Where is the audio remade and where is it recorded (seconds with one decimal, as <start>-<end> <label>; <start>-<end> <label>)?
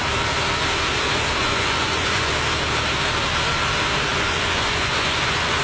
0.0-1.4 recorded; 1.4-2.3 remade; 2.3-4.1 recorded; 4.1-5.6 remade